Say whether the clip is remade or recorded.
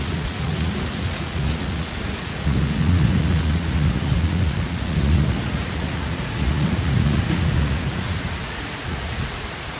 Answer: remade